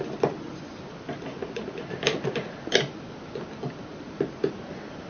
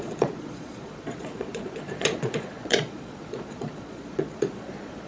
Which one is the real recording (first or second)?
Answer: first